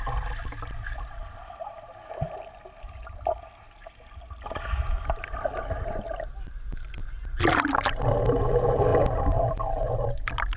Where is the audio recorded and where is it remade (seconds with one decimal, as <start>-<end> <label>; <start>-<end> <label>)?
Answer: 0.0-1.2 recorded; 1.2-3.0 remade; 3.0-7.0 recorded; 7.0-8.2 remade; 8.2-8.9 recorded; 8.9-9.9 remade; 9.9-10.6 recorded